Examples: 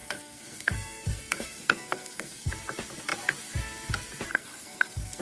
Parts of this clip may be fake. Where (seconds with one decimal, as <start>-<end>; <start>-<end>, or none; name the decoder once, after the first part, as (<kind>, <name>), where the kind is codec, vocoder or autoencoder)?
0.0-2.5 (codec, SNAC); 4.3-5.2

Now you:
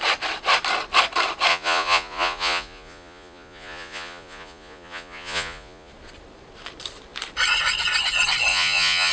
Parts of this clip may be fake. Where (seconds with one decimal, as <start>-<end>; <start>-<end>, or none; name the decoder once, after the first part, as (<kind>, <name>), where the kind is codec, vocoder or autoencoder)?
1.5-5.9 (vocoder, Vocos); 8.5-9.1

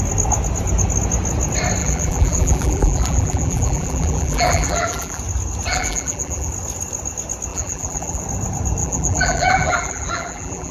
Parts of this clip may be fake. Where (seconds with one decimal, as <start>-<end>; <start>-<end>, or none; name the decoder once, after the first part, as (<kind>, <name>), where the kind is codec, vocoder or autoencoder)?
1.8-5.2 (vocoder, BigVGAN v2); 5.7-6.5; 7.5-8.2; 8.8-10.7

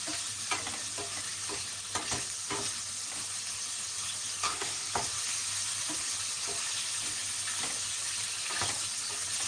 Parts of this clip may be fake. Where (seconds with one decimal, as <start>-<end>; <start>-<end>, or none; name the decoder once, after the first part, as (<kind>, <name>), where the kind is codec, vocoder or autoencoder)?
4.4-4.9 (codec, SNAC)

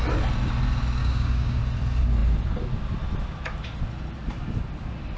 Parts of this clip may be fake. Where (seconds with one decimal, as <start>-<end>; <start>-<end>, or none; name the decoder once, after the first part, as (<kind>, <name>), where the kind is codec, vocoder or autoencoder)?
1.0-1.6 (codec, DAC)

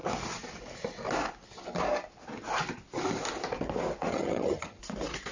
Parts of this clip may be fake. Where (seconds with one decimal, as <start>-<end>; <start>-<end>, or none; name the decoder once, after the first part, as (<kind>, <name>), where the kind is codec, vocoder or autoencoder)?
4.1-4.8 (vocoder, HiFi-GAN)

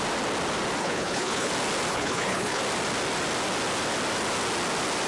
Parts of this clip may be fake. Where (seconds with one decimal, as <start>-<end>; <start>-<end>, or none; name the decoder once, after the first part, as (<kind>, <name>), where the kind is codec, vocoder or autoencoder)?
0.8-1.5 (codec, HILCodec); 1.9-2.6

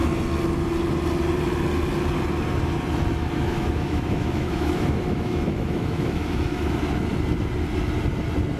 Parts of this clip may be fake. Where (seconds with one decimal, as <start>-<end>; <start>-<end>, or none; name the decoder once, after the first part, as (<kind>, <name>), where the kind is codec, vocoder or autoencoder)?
3.2-6.8 (autoencoder, DAC-VAE)